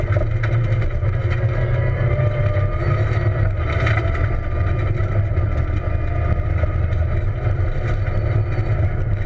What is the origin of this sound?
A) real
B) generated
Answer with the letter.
A